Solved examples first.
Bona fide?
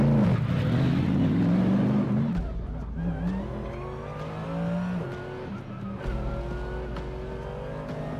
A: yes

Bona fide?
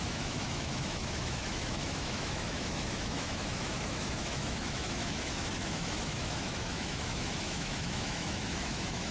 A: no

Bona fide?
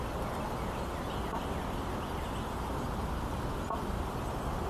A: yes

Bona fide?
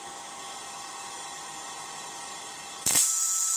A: no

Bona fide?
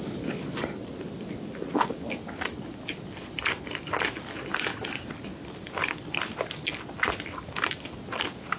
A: yes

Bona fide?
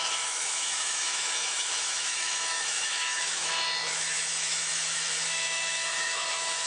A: no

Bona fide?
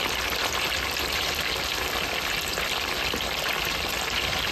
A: yes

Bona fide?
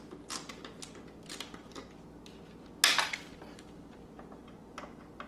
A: yes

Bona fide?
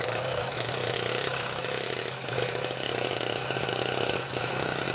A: no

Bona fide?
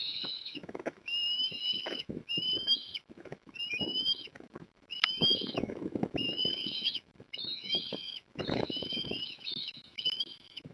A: no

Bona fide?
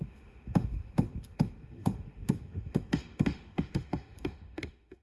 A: no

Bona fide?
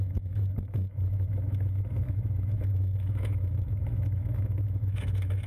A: no